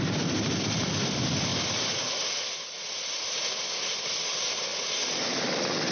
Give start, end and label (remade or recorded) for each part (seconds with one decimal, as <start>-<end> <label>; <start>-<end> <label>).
0.0-5.9 recorded